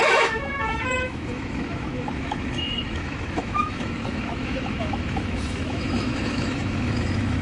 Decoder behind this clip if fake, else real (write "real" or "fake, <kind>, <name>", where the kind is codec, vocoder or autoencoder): fake, autoencoder, DAC-VAE